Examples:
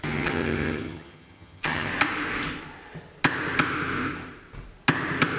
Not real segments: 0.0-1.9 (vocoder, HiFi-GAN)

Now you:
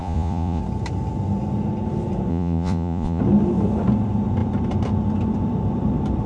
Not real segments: 0.0-0.6 (vocoder, Vocos); 2.3-3.2

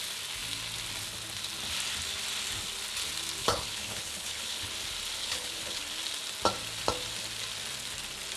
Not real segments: 3.4-4.7 (codec, HILCodec); 5.2-5.8

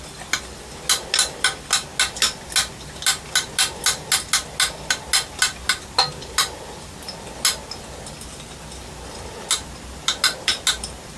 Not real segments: none